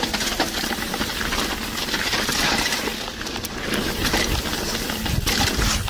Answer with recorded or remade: recorded